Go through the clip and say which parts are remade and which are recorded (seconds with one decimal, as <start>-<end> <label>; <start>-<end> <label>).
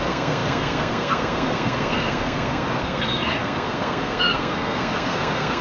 0.0-5.6 remade